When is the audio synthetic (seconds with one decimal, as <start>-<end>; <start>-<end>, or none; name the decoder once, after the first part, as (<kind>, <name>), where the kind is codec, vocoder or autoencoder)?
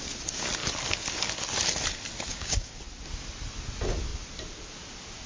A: 2.3-2.8 (codec, DAC)